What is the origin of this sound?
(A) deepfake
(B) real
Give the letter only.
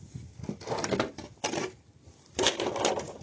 B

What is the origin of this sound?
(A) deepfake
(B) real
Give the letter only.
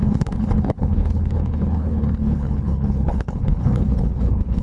A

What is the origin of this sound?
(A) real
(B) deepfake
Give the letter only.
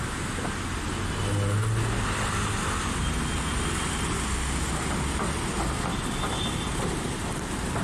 A